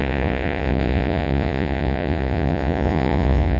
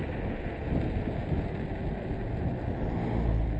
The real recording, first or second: second